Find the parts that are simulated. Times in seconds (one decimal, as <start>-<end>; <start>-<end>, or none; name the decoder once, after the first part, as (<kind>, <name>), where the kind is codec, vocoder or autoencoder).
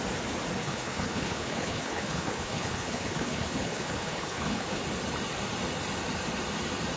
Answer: 0.6-4.8 (codec, HILCodec)